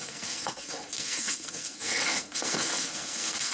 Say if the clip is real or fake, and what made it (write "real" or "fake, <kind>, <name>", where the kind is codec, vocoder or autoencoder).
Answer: fake, codec, SNAC